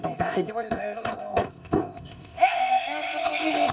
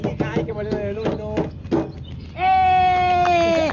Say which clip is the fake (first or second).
first